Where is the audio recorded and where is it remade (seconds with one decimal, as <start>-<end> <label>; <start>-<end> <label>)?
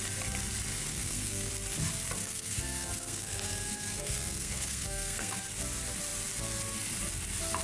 0.0-0.9 recorded; 0.9-1.5 remade; 1.5-2.2 recorded; 2.2-5.4 remade; 5.4-7.6 recorded